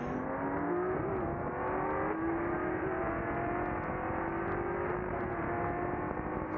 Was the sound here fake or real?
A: real